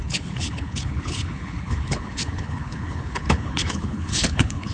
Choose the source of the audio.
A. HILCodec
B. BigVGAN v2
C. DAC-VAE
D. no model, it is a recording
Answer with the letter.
A